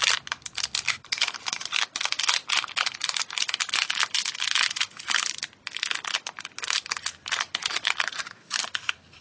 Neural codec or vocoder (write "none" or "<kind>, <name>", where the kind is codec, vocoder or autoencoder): none